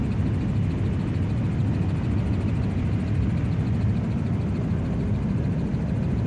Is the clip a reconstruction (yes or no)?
no